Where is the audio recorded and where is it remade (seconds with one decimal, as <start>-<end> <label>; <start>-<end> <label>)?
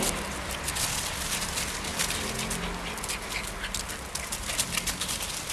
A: 0.0-5.5 recorded